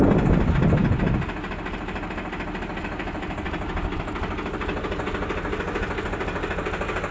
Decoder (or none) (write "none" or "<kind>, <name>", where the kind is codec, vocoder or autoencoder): none